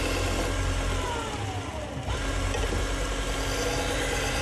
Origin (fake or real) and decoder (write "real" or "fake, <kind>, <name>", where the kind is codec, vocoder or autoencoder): real